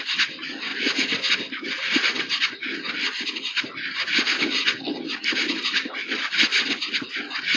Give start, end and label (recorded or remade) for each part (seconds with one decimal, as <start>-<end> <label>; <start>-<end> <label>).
0.0-7.6 recorded

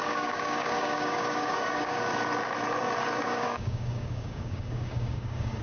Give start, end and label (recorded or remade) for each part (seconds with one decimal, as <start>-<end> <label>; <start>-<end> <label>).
0.0-2.0 remade; 2.0-3.2 recorded; 3.2-5.6 remade

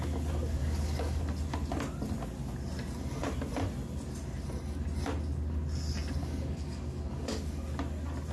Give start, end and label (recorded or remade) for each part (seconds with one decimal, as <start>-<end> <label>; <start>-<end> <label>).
0.0-0.6 recorded; 0.6-1.2 remade; 1.2-6.2 recorded; 6.2-7.3 remade; 7.3-8.3 recorded